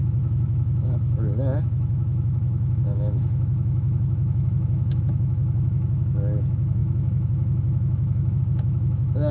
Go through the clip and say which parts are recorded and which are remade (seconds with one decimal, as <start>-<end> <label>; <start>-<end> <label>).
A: 0.0-9.3 remade